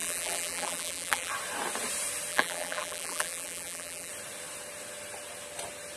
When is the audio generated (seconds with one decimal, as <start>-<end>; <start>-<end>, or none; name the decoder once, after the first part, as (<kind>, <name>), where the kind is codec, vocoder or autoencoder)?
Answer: 0.0-1.3 (vocoder, BigVGAN v2); 2.3-4.1